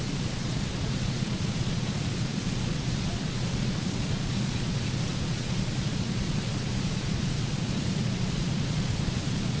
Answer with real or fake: fake